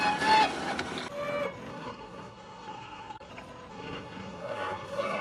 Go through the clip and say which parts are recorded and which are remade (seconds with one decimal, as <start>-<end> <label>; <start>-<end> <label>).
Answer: 0.0-1.7 recorded; 1.7-3.3 remade; 3.3-3.7 recorded; 3.7-5.2 remade